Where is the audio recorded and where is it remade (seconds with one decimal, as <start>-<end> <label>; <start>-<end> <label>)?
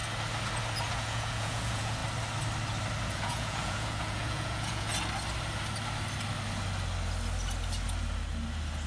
0.0-0.9 recorded; 0.9-2.0 remade; 2.0-3.1 recorded; 3.1-4.9 remade; 4.9-8.9 recorded